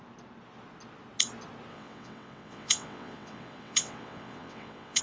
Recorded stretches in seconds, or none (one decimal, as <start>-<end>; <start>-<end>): 0.0-1.7